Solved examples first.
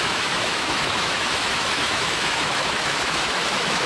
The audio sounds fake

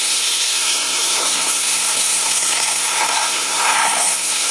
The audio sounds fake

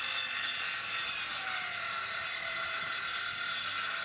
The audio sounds real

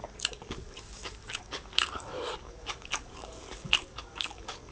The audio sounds fake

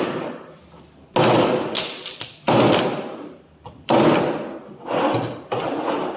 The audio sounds real